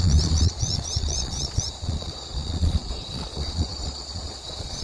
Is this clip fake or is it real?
fake